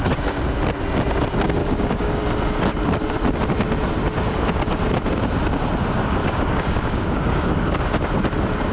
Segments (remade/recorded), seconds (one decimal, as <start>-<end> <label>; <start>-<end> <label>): 0.0-1.6 recorded; 1.6-2.2 remade; 2.2-4.0 recorded; 4.0-4.8 remade; 4.8-6.2 recorded; 6.2-7.8 remade; 7.8-8.7 recorded